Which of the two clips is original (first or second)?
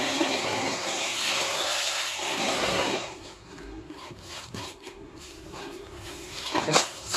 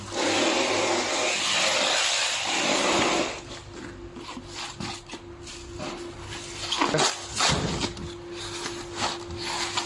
second